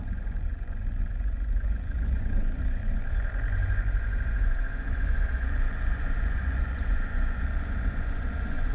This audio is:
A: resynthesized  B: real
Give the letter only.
A